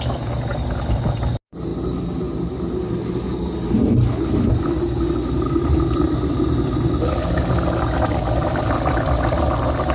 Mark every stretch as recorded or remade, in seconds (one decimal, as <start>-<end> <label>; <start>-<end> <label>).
0.0-9.9 recorded